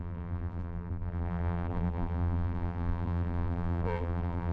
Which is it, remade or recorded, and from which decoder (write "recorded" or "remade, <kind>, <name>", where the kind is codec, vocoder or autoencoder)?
remade, vocoder, BigVGAN v2